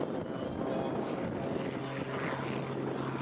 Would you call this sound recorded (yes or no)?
yes